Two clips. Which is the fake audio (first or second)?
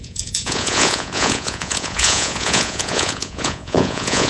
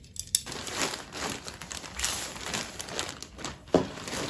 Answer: first